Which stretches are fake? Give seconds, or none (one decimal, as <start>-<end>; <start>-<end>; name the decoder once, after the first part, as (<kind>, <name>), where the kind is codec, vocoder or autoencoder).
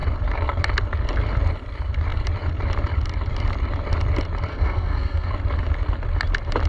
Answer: 4.5-5.3 (codec, SNAC)